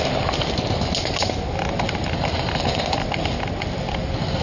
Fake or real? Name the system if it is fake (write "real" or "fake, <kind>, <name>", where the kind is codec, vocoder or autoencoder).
real